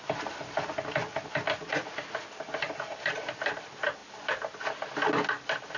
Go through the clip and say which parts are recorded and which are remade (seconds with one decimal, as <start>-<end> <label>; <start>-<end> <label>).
0.0-5.8 recorded